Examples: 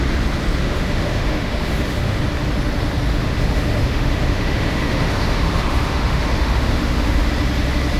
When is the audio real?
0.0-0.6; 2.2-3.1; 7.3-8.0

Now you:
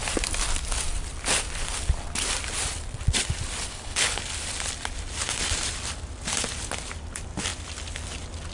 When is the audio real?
0.0-3.7; 4.2-8.5

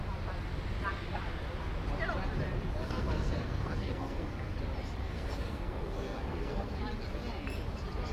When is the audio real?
0.0-2.8; 4.5-5.0; 6.8-8.1

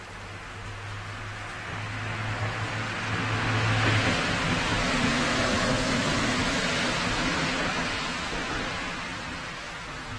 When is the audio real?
0.0-4.7; 6.6-7.7; 8.3-10.2

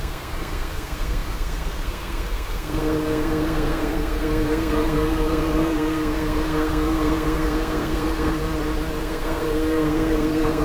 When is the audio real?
8.4-9.0

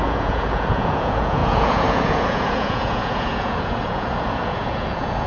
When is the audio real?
none